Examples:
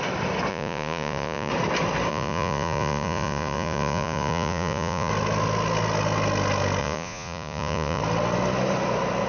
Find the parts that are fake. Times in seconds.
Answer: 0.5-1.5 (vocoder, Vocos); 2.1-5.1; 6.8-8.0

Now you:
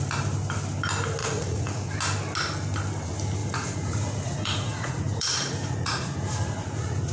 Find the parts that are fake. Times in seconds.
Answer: 1.2-1.9 (vocoder, Vocos); 3.4-7.1

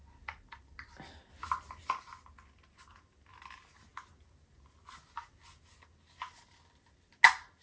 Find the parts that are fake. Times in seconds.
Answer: none

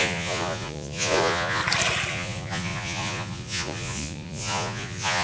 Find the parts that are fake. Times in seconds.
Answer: 0.0-1.6 (vocoder, Vocos); 2.1-5.2

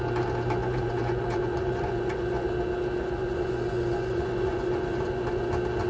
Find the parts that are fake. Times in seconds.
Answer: 0.6-2.5 (vocoder, Vocos); 3.0-5.5

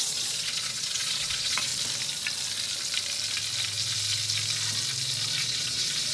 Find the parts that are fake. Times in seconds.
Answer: 0.0-1.7 (vocoder, Vocos); 5.4-6.1

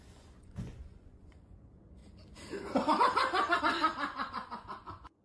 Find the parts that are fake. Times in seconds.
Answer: 0.0-2.0 (vocoder, Vocos); 3.6-5.2

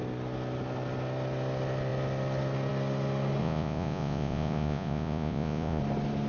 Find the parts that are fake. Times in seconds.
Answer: 3.4-5.8 (vocoder, Vocos)